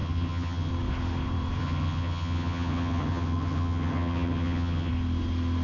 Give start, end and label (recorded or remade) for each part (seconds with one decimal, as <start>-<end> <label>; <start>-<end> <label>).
0.0-0.7 remade; 0.7-1.6 recorded; 1.6-4.9 remade; 4.9-5.6 recorded